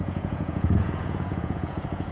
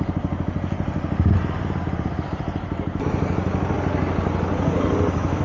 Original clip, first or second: second